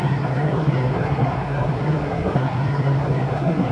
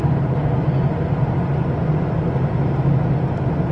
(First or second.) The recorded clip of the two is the second